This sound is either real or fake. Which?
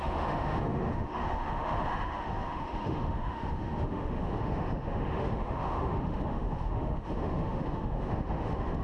fake